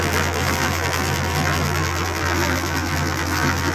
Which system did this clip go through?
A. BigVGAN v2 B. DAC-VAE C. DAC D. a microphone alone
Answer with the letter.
A